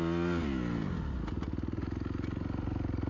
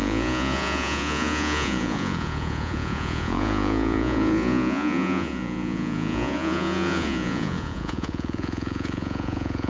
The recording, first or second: first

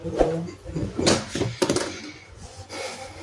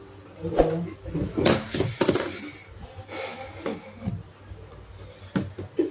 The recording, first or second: second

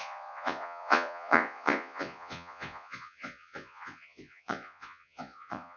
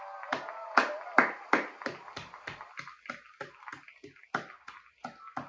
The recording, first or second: second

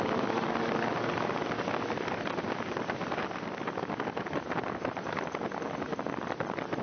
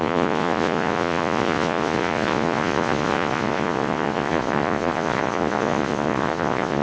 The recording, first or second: first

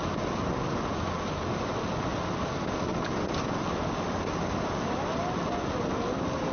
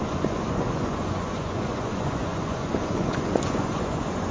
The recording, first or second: first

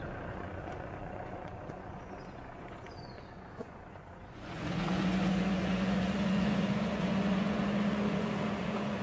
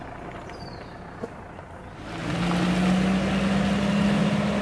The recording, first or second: second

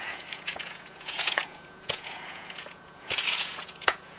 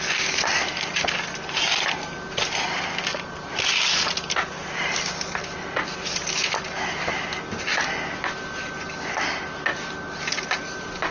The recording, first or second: second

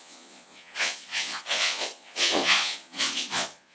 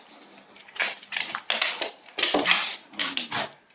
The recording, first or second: second